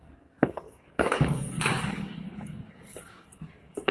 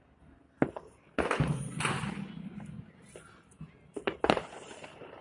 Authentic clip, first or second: second